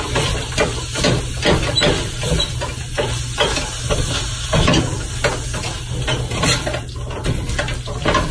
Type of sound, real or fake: real